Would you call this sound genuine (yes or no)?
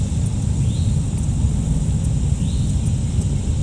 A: yes